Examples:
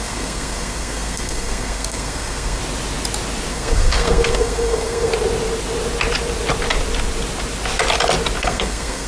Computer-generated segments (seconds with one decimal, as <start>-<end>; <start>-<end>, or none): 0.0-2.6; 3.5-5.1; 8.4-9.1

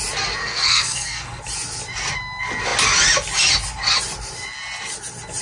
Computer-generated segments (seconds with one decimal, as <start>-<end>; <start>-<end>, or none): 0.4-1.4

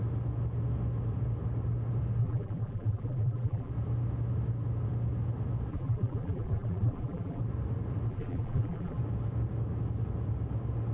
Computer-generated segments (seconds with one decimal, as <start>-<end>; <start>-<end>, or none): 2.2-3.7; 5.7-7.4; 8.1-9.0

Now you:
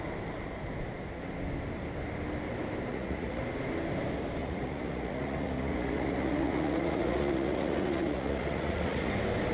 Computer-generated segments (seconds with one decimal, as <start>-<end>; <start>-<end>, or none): 2.9-3.4; 4.4-9.1